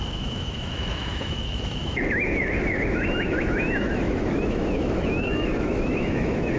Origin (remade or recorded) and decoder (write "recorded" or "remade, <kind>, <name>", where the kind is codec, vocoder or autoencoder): remade, autoencoder, DAC-VAE